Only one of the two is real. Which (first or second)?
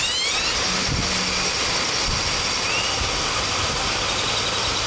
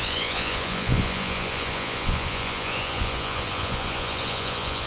first